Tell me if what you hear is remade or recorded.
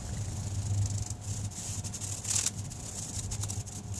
recorded